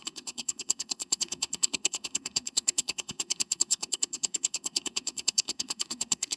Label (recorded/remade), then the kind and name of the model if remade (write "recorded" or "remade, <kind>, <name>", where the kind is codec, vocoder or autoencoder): remade, codec, SNAC